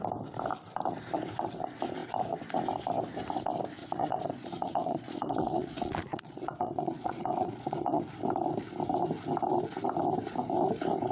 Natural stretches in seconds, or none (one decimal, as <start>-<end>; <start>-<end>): 0.0-3.8; 8.0-11.1